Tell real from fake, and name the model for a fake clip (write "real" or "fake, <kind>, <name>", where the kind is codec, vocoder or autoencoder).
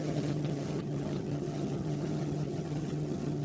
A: fake, vocoder, HiFi-GAN